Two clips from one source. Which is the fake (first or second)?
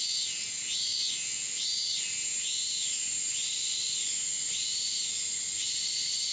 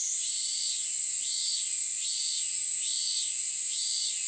second